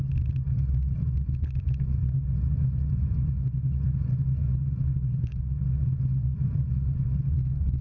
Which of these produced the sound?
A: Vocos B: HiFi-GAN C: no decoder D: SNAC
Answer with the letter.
C